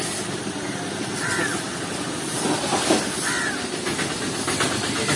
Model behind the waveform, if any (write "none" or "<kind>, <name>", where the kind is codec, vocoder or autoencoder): none